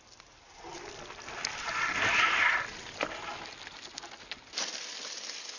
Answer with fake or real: real